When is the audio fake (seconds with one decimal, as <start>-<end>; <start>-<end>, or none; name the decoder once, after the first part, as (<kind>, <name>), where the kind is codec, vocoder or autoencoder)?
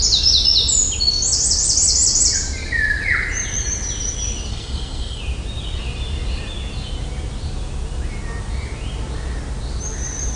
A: 4.5-5.2 (codec, SNAC)